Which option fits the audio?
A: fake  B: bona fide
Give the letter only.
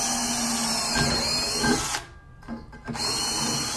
B